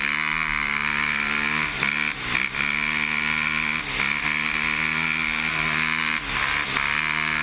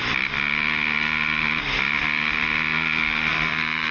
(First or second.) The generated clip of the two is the second